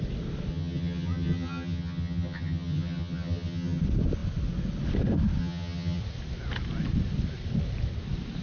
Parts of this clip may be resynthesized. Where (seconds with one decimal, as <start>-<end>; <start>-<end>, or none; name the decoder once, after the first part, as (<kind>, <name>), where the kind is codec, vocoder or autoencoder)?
0.5-3.8 (vocoder, HiFi-GAN); 5.4-6.0